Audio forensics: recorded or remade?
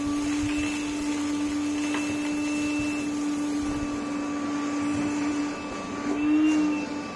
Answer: recorded